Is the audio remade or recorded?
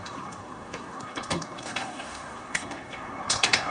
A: remade